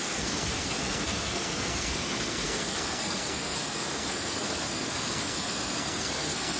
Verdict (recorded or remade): remade